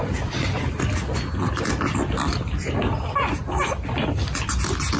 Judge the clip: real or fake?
real